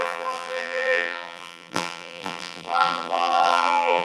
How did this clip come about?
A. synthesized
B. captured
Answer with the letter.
A